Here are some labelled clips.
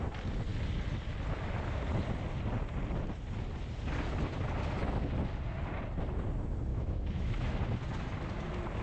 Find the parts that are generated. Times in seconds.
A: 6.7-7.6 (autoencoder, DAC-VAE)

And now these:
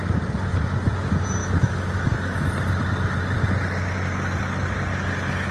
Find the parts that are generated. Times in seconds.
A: 1.4-2.5 (autoencoder, DAC-VAE)

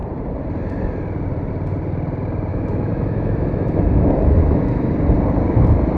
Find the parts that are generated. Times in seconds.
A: 2.5-4.9 (autoencoder, DAC-VAE)

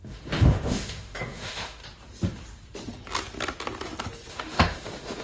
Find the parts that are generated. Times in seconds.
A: 0.0-1.8 (autoencoder, DAC-VAE); 4.3-5.2

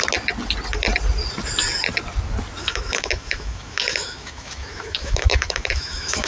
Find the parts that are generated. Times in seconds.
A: 2.6-6.3 (autoencoder, DAC-VAE)